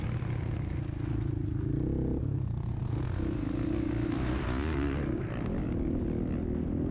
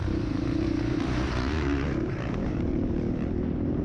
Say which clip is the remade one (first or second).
second